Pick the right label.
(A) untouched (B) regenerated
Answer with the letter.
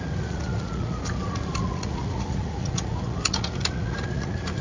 B